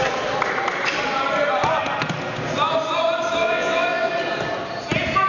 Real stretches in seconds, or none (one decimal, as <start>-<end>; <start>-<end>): 0.0-3.4; 4.1-5.3